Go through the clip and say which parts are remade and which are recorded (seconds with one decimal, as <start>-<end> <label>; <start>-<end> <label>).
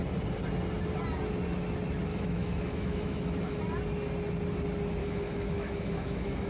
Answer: 0.0-2.1 recorded; 2.1-3.6 remade; 3.6-5.0 recorded; 5.0-6.5 remade